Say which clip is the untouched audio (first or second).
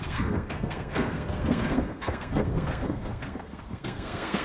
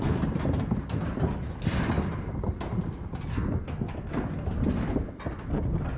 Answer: second